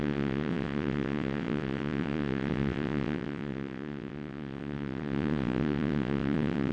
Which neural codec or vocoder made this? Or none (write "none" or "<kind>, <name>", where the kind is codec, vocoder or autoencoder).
vocoder, WaveNeXt